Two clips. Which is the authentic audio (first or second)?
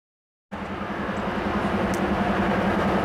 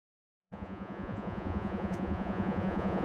first